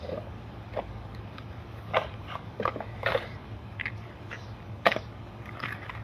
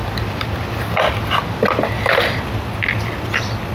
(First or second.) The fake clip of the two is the first